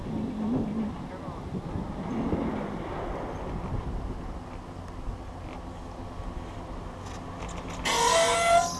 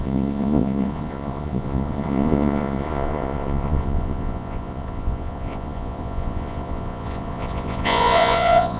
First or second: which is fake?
second